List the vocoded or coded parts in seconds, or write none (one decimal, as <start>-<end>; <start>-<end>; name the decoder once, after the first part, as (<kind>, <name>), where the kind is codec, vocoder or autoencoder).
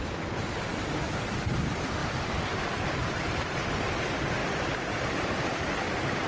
none